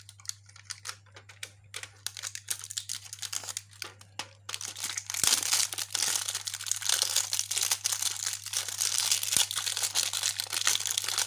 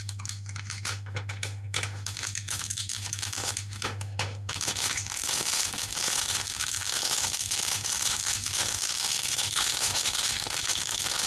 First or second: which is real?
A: first